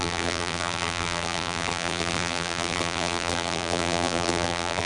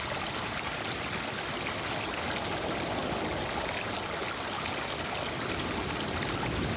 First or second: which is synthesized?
first